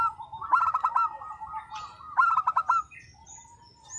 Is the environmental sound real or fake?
real